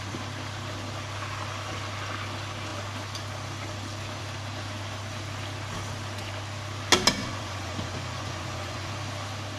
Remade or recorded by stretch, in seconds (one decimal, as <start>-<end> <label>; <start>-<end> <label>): 0.0-7.2 recorded; 7.2-8.9 remade; 8.9-9.6 recorded